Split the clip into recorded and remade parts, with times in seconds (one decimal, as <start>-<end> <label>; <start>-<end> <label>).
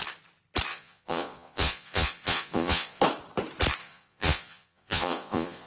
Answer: 0.0-0.7 recorded; 0.7-3.0 remade; 3.0-3.8 recorded; 3.8-5.7 remade